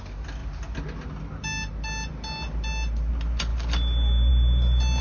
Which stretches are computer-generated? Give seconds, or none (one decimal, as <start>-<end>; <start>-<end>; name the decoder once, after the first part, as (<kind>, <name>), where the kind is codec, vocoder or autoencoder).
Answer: none